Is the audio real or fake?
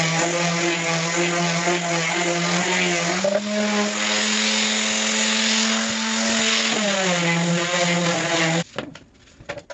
real